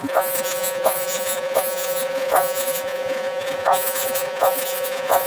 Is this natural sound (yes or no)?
no